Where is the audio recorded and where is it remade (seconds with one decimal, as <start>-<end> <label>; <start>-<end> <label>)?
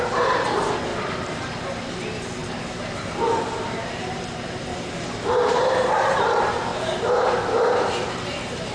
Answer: 0.0-0.9 recorded; 0.9-1.9 remade; 1.9-2.4 recorded; 2.4-4.2 remade; 4.2-4.7 recorded; 4.7-5.9 remade; 5.9-6.7 recorded; 6.7-8.1 remade; 8.1-8.7 recorded